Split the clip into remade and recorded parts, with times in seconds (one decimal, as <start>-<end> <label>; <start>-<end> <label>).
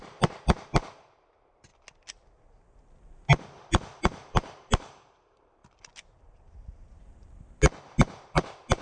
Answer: 0.0-1.7 remade; 1.7-4.0 recorded; 4.0-5.6 remade; 5.6-7.8 recorded; 7.8-8.8 remade